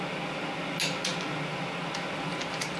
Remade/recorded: recorded